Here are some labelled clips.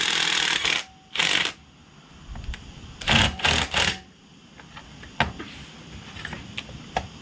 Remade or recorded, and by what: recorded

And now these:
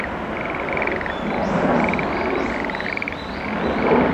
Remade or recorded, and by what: recorded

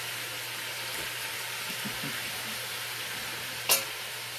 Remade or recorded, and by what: recorded